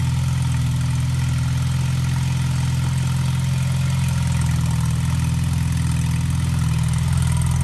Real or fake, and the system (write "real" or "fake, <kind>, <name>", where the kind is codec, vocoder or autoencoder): real